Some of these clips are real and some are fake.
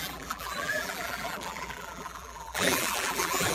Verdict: fake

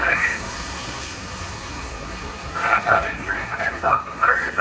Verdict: fake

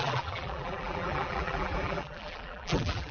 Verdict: fake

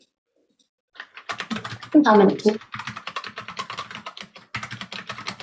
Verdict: real